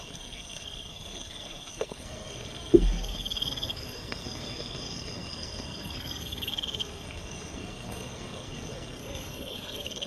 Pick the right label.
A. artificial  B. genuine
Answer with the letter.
A